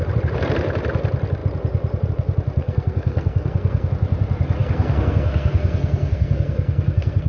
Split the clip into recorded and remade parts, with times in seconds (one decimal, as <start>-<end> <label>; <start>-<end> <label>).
0.0-2.6 recorded; 2.6-3.9 remade; 3.9-4.6 recorded; 4.6-7.3 remade